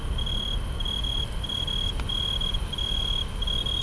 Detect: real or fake real